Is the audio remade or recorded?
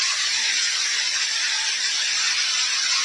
recorded